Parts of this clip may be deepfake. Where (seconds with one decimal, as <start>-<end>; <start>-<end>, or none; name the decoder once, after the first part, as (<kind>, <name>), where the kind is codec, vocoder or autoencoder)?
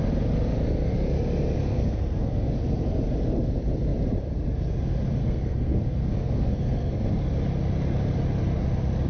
1.6-2.5 (codec, SNAC); 5.2-7.1